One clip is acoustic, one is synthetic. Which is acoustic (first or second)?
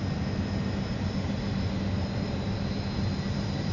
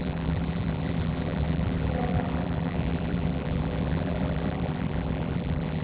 first